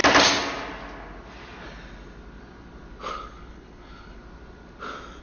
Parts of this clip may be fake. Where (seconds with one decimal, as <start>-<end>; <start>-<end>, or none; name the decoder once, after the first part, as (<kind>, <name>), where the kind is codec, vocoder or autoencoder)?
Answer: 3.1-4.2 (codec, HILCodec)